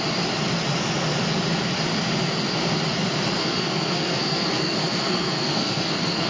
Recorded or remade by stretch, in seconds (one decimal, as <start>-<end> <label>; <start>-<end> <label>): 0.0-3.4 recorded; 3.4-6.3 remade